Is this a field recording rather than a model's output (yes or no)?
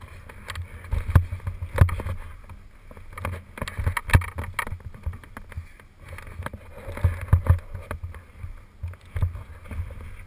yes